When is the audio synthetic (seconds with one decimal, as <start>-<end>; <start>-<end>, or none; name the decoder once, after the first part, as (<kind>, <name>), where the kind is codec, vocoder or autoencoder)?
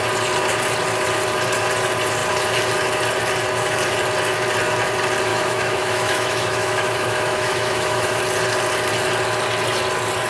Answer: 5.3-8.2 (autoencoder, DAC-VAE)